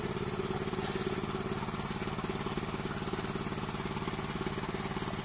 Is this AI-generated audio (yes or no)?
no